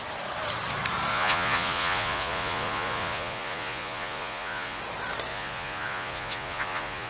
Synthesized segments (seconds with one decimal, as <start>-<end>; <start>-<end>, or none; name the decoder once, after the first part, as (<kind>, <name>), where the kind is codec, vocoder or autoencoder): 1.1-4.8 (vocoder, Vocos); 5.3-7.1